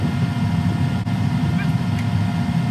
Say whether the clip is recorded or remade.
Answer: recorded